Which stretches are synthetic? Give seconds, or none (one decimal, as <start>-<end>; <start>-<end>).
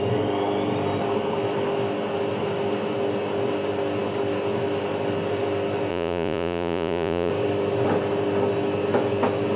5.9-7.3